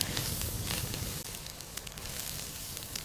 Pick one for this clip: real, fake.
fake